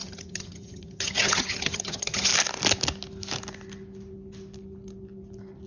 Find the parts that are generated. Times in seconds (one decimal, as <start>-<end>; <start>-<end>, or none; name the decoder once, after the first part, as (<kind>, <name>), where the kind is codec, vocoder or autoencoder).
0.0-2.3 (vocoder, HiFi-GAN)